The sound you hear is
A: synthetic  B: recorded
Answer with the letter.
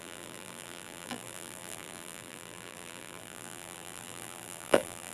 A